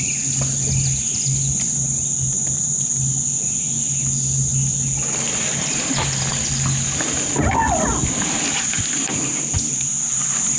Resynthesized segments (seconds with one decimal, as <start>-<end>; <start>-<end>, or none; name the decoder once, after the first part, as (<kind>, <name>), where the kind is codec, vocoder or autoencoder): none